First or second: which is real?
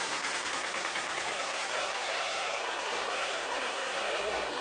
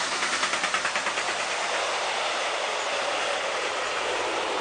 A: second